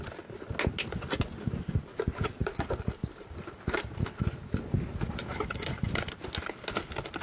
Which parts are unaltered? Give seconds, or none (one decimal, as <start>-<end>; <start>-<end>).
0.0-2.4; 4.3-4.9; 6.1-7.2